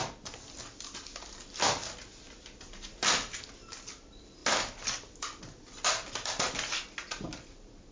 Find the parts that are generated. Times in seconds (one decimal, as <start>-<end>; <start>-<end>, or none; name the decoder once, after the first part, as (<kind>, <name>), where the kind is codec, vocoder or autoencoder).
none